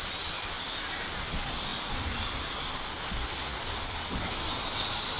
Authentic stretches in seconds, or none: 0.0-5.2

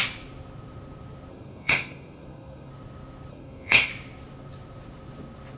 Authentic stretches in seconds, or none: 0.0-1.3; 2.7-3.3; 3.9-5.6